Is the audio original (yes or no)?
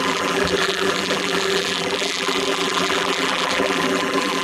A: no